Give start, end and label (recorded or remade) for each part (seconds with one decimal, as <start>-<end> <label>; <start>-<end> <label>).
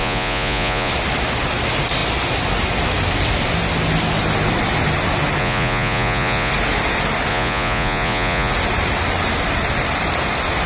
0.0-0.9 remade; 0.9-5.4 recorded; 5.4-6.5 remade; 6.5-7.3 recorded; 7.3-8.5 remade; 8.5-10.7 recorded